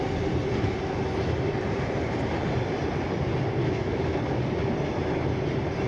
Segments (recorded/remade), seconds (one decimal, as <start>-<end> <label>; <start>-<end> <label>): 0.0-3.6 recorded; 3.6-4.2 remade; 4.2-5.9 recorded